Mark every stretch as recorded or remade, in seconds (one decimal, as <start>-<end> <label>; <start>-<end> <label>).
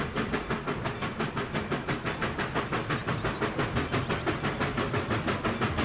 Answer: 0.0-5.8 recorded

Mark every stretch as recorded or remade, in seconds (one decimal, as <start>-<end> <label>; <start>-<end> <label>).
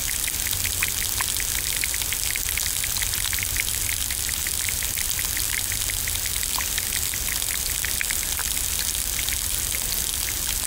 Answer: 0.0-10.7 recorded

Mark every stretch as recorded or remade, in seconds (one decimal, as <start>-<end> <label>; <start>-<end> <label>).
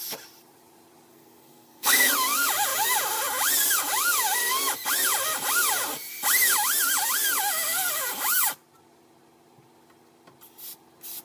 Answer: 0.0-1.1 recorded; 1.1-2.1 remade; 2.1-11.2 recorded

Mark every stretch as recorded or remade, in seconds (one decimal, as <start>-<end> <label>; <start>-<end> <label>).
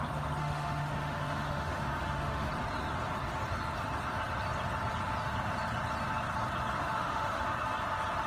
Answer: 0.0-0.4 recorded; 0.4-2.5 remade; 2.5-6.8 recorded; 6.8-7.4 remade; 7.4-8.3 recorded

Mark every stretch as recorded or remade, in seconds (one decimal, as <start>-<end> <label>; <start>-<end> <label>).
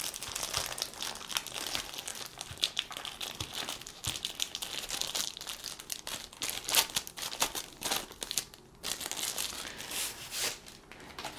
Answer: 0.0-11.4 recorded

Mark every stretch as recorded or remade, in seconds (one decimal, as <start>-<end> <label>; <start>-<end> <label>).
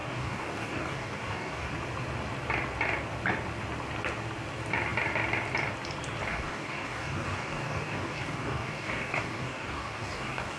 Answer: 0.0-1.7 remade; 1.7-6.3 recorded; 6.3-10.6 remade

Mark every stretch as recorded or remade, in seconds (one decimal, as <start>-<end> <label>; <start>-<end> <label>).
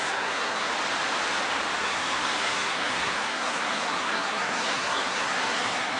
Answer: 0.0-0.7 remade; 0.7-1.8 recorded; 1.8-6.0 remade